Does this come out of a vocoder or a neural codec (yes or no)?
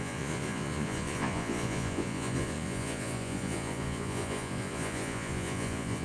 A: yes